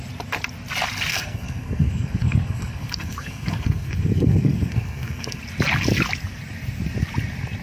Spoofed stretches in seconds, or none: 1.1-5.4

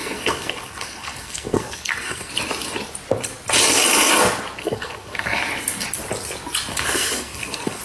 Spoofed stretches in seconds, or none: 0.0-2.3; 4.6-5.4; 6.7-7.8

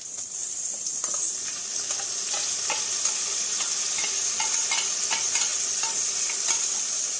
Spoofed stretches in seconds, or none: none

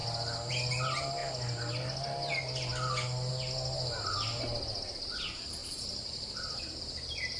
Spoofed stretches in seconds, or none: 5.6-6.6

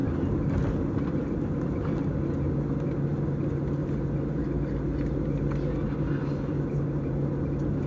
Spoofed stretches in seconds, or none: none

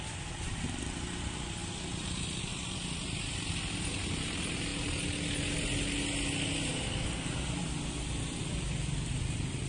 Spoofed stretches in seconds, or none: 0.0-1.6; 2.5-4.7; 8.4-9.7